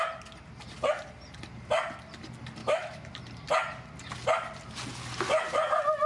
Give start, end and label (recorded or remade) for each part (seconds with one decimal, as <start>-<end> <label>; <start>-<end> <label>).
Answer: 0.0-2.6 recorded; 2.6-3.1 remade; 3.1-6.1 recorded

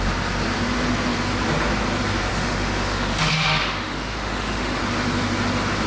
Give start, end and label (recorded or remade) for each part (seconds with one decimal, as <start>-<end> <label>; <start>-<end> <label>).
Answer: 0.0-2.3 recorded; 2.3-4.8 remade; 4.8-5.9 recorded

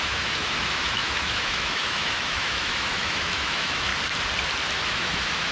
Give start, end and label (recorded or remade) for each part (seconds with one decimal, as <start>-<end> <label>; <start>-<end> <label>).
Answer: 0.0-3.9 remade; 3.9-4.9 recorded; 4.9-5.5 remade

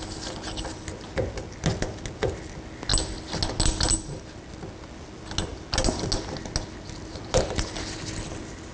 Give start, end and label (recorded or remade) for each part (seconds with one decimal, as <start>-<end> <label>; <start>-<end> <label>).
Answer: 0.0-8.7 recorded